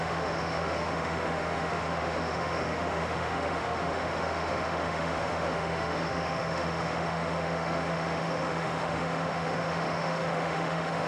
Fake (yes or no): yes